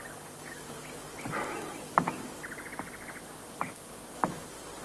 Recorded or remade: recorded